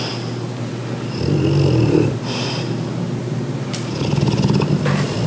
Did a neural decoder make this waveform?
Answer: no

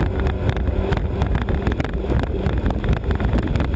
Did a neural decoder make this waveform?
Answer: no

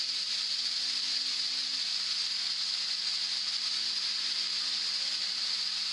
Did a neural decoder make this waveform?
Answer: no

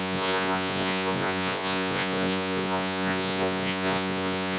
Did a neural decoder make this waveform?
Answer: yes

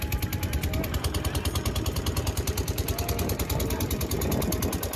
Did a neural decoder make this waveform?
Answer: no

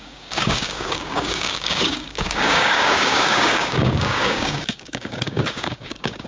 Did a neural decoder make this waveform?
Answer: yes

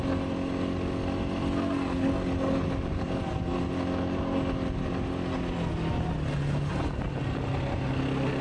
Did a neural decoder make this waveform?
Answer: no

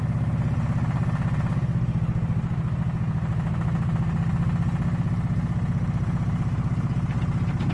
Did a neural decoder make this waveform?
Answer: no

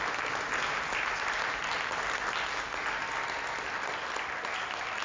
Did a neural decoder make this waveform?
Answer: no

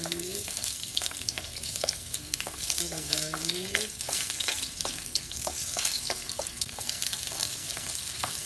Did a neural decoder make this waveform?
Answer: yes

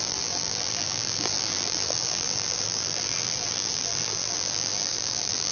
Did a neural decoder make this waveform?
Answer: yes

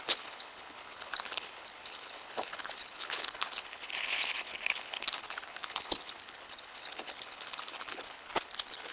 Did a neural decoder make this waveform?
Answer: yes